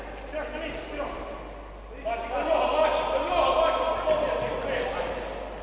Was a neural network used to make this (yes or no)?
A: no